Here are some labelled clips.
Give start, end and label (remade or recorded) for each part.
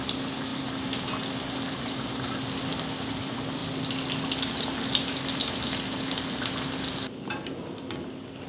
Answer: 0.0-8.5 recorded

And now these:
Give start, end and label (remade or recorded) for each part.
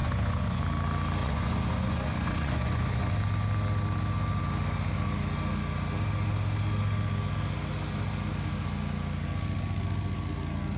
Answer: 0.0-0.6 remade; 0.6-1.2 recorded; 1.2-3.1 remade; 3.1-10.8 recorded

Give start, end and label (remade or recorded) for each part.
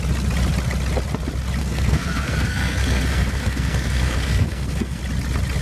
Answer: 0.0-1.6 recorded; 1.6-5.0 remade; 5.0-5.6 recorded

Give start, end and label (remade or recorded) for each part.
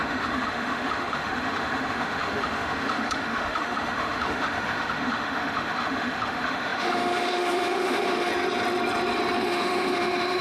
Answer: 0.0-8.3 remade; 8.3-9.4 recorded; 9.4-10.4 remade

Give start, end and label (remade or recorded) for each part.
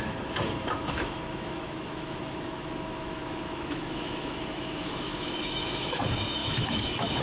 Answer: 0.0-7.2 remade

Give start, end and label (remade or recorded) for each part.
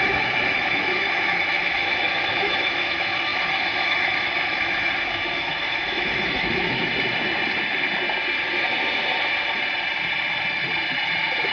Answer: 0.0-6.9 remade; 6.9-11.5 recorded